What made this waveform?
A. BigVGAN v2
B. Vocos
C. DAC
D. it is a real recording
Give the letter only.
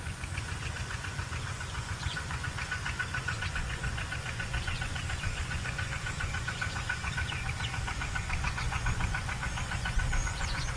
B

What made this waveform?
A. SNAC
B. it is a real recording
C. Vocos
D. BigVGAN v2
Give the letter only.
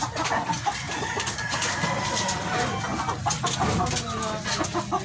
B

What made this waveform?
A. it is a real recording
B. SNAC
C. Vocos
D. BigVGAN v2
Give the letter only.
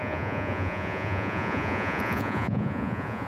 C